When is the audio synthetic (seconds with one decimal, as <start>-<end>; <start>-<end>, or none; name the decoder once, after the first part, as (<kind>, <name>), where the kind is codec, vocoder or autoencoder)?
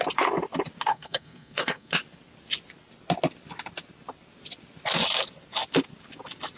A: 0.9-1.9 (codec, SNAC)